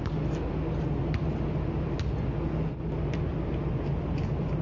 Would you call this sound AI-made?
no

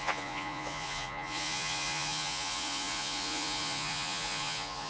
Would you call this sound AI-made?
yes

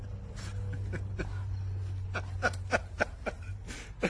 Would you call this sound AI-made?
no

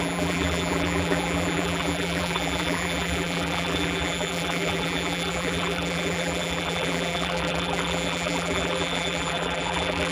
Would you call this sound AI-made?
yes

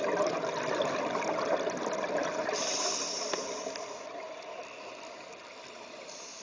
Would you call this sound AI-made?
no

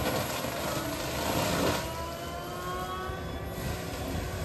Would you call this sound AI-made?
no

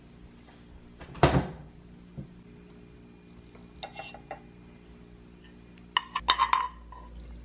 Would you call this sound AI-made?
no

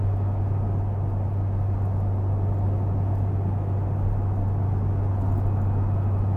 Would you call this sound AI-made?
no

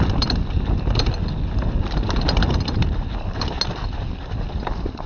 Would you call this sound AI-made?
no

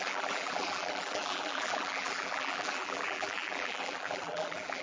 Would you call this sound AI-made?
yes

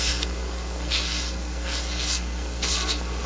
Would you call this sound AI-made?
yes